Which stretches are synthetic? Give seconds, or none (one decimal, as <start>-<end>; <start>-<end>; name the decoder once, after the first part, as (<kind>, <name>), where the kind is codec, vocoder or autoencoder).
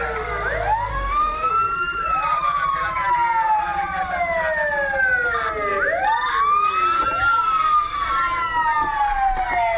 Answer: 0.9-1.5 (autoencoder, DAC-VAE)